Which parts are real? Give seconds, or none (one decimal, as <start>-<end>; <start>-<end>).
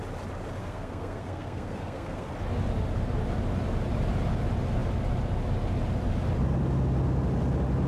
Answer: 0.0-0.6; 2.3-7.9